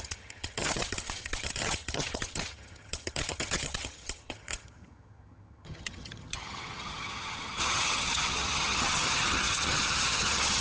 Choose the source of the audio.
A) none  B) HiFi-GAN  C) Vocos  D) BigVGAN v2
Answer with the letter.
B